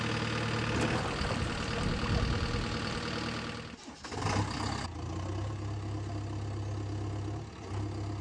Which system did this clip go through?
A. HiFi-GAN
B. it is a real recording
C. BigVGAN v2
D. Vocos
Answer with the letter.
B